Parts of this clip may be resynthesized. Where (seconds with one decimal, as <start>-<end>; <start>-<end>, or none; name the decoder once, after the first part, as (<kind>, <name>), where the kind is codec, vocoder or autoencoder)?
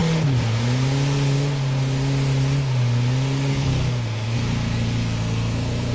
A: 3.5-5.9 (codec, SNAC)